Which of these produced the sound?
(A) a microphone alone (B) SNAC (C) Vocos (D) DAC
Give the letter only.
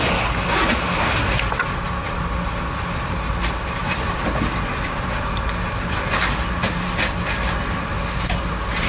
A